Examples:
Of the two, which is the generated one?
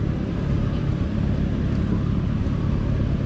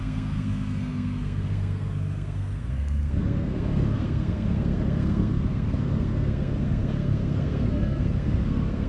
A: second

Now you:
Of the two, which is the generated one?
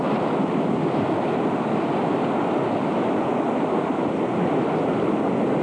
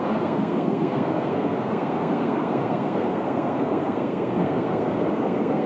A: second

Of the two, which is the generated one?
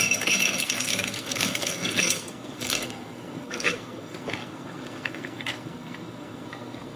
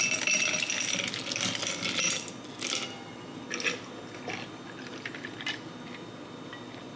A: first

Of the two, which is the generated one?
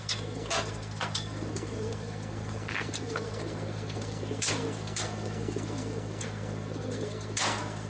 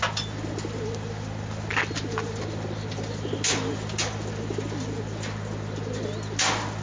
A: first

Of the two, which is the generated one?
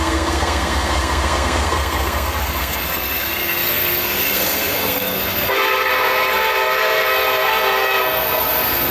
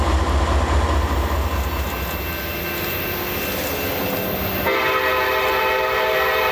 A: first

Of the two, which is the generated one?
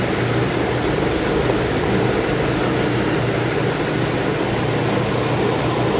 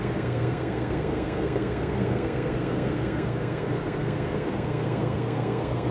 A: second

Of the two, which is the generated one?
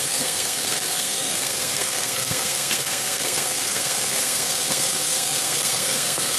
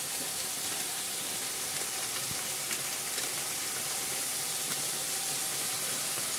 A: first